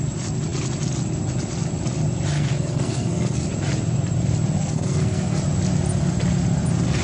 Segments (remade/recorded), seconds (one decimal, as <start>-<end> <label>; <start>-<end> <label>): 0.0-2.3 recorded; 2.3-3.5 remade; 3.5-4.6 recorded; 4.6-5.4 remade; 5.4-7.0 recorded